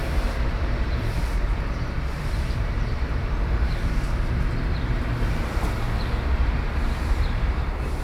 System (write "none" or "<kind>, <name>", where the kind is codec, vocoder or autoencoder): vocoder, BigVGAN v2